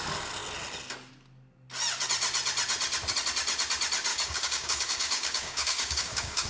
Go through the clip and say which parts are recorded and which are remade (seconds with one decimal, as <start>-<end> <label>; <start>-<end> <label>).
0.0-4.1 recorded; 4.1-6.5 remade